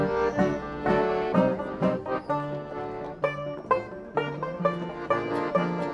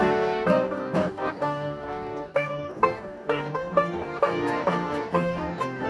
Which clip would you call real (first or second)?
first